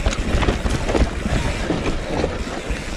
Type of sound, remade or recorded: recorded